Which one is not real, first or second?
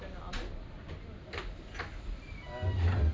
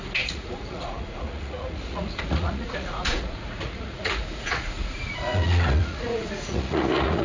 second